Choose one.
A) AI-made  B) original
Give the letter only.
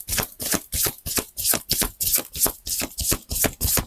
B